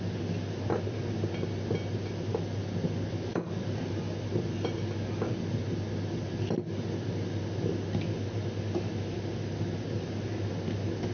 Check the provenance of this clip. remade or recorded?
recorded